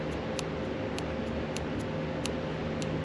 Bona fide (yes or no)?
yes